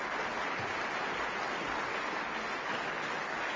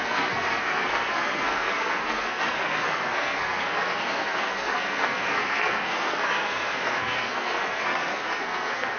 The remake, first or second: second